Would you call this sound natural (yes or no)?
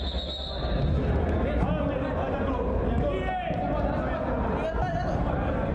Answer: yes